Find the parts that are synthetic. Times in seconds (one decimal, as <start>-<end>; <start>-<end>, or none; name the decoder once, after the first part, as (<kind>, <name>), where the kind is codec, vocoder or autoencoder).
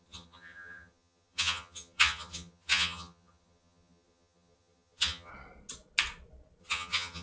0.0-5.3 (vocoder, HiFi-GAN); 6.6-7.2